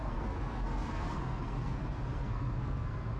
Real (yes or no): no